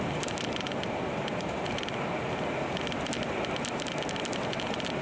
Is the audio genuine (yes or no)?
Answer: yes